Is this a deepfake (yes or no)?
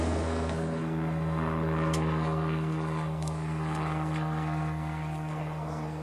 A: yes